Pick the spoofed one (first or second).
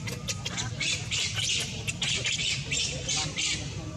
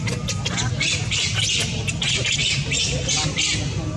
first